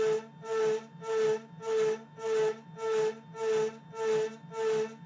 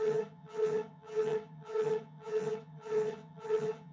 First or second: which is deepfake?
second